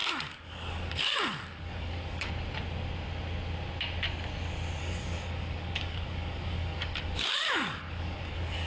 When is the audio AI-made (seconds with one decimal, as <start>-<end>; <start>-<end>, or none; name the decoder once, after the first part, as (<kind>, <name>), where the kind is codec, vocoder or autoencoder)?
0.0-2.3 (codec, DAC); 4.8-8.7

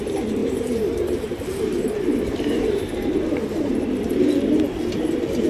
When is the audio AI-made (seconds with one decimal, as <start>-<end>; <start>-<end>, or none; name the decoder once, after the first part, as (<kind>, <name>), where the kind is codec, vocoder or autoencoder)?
0.4-3.7 (vocoder, BigVGAN v2)